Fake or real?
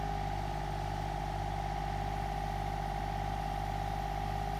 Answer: real